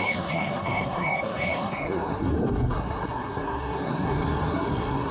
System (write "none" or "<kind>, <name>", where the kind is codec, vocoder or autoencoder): codec, SNAC